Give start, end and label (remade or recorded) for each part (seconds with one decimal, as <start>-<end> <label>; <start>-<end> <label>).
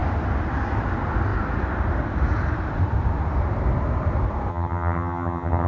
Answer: 0.0-4.5 recorded; 4.5-5.7 remade